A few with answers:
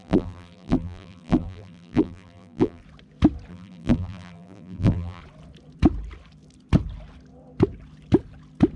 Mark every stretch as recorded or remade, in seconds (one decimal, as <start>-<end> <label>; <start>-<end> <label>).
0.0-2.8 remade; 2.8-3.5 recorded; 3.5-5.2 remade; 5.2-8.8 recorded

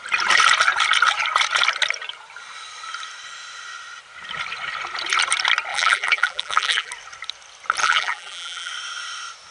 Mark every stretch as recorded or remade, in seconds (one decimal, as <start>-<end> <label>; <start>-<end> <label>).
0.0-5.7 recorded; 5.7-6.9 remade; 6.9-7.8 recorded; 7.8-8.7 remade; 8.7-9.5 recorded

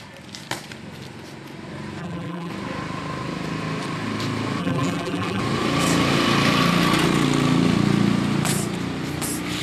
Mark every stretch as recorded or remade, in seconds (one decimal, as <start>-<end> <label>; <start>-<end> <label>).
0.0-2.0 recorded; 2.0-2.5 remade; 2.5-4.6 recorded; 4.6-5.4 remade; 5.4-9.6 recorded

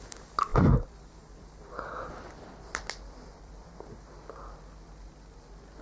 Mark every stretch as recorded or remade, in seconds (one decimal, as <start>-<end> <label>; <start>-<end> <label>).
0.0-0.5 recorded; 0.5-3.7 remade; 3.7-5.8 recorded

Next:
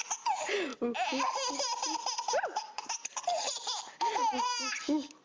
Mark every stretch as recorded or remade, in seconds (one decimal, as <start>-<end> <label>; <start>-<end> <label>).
0.0-5.2 recorded